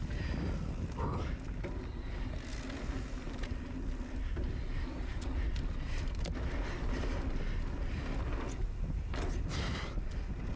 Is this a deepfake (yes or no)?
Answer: no